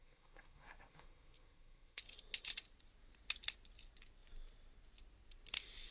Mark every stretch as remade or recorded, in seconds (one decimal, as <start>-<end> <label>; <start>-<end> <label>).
0.0-2.0 remade; 2.0-5.9 recorded